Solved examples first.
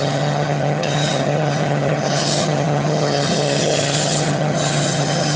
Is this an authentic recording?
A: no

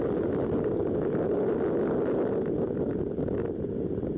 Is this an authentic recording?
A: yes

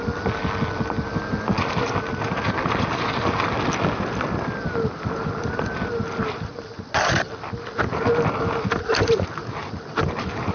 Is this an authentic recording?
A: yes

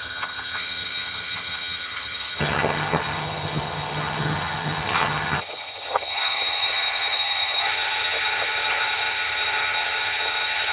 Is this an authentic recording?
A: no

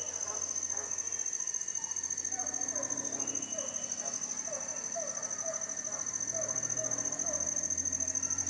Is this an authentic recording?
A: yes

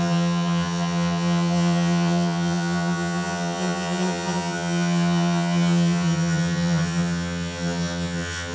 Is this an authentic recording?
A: no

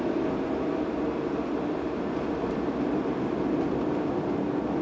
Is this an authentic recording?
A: yes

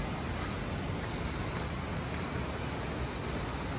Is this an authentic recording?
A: yes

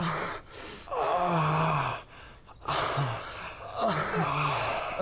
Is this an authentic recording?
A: yes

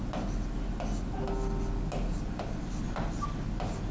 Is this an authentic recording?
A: yes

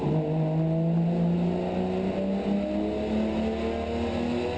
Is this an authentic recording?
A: yes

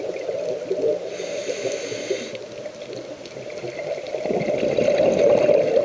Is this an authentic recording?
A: yes